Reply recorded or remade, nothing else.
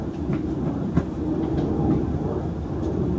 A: recorded